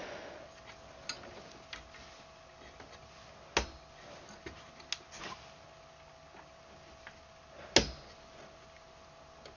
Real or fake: real